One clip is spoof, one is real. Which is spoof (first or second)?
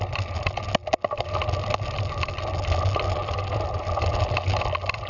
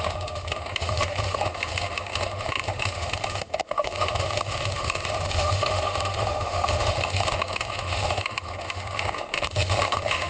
second